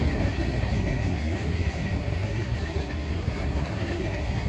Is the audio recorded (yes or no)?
no